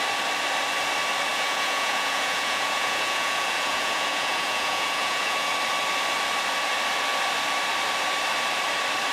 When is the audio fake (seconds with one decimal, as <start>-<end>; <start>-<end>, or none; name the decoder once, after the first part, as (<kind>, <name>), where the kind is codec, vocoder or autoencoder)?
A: 1.3-5.5 (vocoder, Vocos)